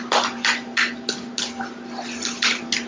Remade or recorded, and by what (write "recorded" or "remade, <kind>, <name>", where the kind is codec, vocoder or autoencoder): recorded